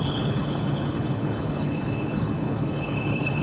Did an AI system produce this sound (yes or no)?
yes